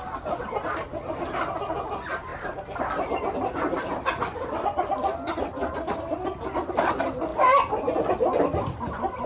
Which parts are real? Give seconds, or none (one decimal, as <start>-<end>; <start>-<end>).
7.3-8.4

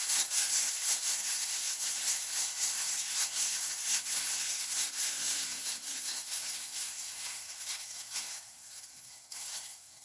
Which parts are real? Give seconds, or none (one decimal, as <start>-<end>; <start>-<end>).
none